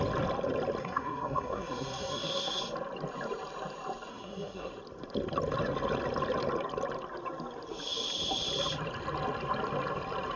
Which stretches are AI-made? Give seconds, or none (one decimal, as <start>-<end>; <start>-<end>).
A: 0.8-2.6; 4.1-4.7